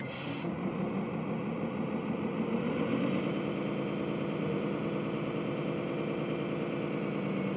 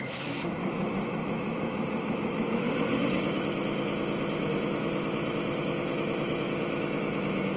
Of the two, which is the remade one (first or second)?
second